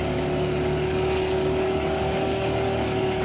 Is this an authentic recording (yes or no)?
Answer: no